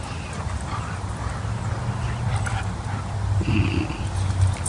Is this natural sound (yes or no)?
yes